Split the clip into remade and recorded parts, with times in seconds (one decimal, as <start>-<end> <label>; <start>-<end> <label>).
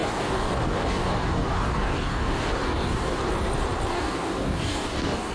0.0-3.2 remade; 3.2-3.9 recorded; 3.9-5.3 remade